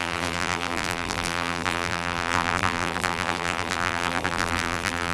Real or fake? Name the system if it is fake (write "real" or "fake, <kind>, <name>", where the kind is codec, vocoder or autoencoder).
fake, vocoder, BigVGAN v2